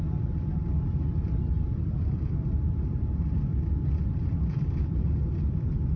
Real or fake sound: real